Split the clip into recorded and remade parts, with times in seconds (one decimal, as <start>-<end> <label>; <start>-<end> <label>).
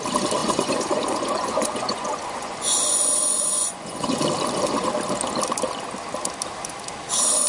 0.0-0.4 recorded; 0.4-4.2 remade; 4.2-7.5 recorded